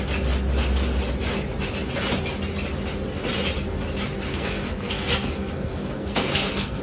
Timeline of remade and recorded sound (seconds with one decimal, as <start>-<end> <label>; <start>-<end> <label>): 0.0-4.3 recorded; 4.3-6.8 remade